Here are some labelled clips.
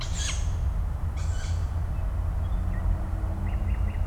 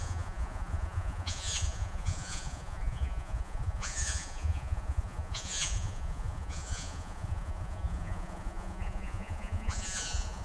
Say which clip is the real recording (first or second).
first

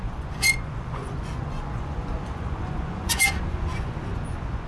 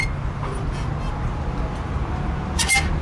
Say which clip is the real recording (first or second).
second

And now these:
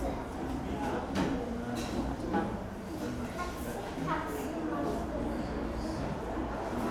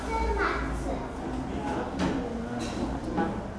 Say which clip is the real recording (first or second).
second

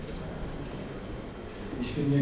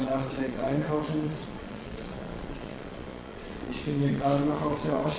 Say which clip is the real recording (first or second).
first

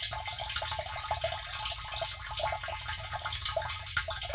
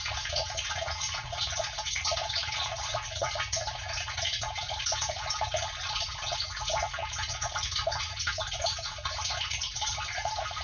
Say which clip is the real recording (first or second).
first